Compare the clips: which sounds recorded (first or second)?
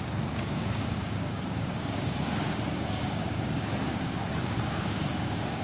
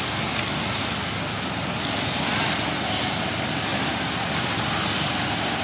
second